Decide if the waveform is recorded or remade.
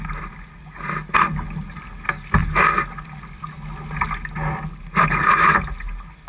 recorded